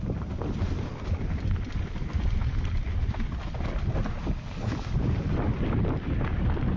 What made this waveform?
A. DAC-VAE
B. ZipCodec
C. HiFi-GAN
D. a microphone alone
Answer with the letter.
D